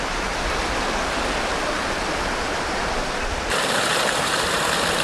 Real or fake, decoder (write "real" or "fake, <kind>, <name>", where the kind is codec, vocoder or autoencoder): real